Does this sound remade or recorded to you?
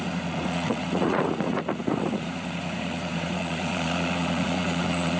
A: remade